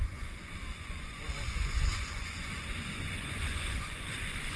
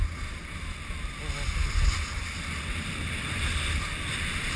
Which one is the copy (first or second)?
first